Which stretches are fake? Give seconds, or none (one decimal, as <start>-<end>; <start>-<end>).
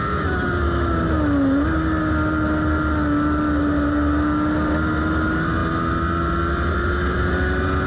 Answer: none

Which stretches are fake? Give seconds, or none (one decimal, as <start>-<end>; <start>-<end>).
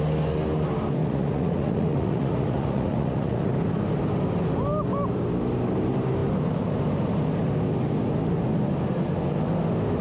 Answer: 1.0-3.5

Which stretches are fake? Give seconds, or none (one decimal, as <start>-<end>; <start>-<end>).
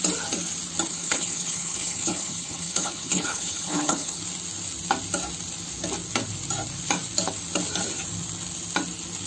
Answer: 0.9-4.2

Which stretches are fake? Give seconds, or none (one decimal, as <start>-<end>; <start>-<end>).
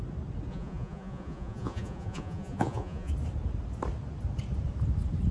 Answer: 0.5-3.1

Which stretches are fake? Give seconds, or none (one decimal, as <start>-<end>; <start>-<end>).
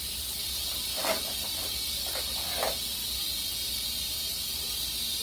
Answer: 0.9-1.9; 3.0-3.5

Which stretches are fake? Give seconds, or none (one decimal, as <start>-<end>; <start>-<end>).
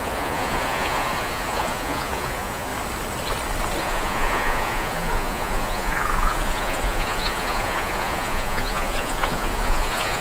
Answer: 0.0-2.7; 3.8-10.2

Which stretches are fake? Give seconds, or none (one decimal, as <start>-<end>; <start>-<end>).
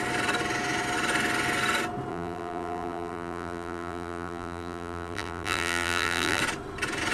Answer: 2.1-6.4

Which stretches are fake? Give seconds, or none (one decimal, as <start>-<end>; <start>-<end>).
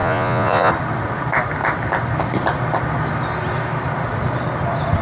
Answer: 0.0-0.7